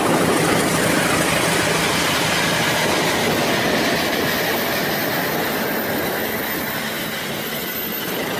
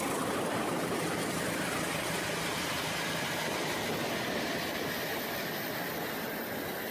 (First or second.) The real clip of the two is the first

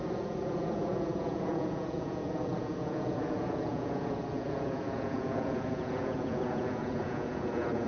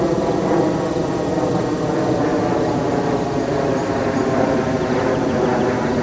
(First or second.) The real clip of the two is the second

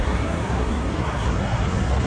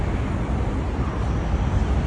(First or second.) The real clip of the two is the second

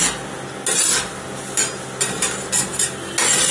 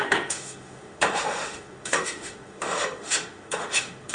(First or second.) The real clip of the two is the first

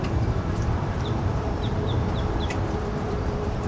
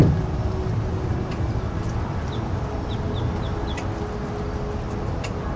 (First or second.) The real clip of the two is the second